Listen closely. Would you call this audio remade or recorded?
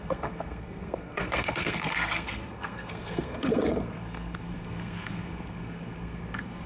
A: remade